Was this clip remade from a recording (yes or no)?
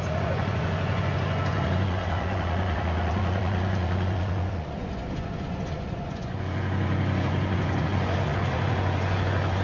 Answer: yes